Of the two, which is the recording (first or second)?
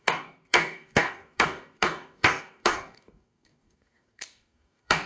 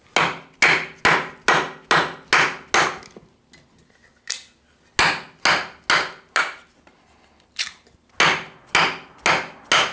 second